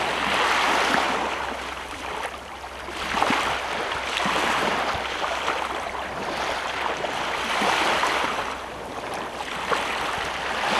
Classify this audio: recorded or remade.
recorded